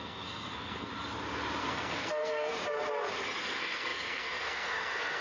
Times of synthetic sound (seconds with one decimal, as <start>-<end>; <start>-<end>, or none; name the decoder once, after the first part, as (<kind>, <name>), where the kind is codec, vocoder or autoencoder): 0.0-0.9 (codec, SNAC); 1.6-2.5; 3.4-5.2